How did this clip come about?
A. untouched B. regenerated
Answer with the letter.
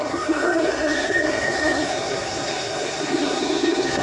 B